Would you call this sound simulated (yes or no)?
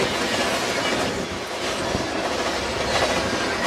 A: no